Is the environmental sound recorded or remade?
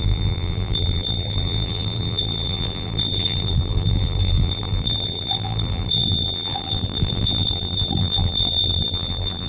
remade